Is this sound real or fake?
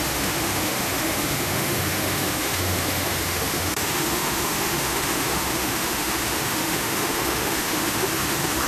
fake